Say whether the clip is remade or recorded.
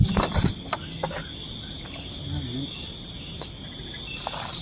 recorded